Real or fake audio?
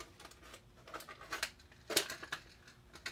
real